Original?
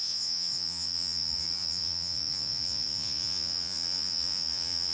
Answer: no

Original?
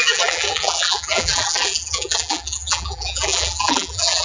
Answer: no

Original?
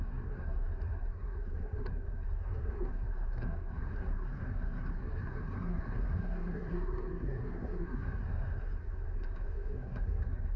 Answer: no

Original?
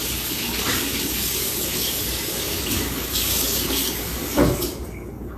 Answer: no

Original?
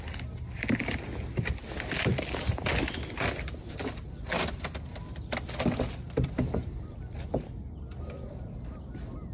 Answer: yes